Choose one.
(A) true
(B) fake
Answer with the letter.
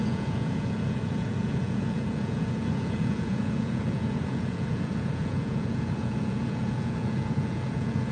B